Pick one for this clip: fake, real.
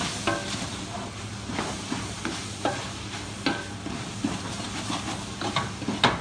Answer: real